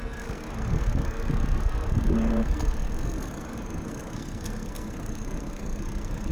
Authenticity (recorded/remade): remade